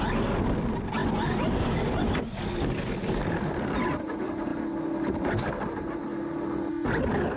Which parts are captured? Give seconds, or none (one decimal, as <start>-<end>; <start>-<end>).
0.0-7.4